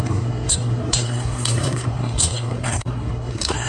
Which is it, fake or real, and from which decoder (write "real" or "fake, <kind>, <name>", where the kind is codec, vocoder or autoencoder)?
fake, codec, SNAC